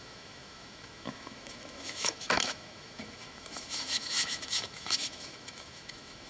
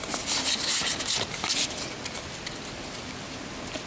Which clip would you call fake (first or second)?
first